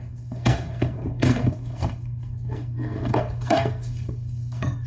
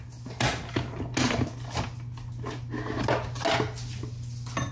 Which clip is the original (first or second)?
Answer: second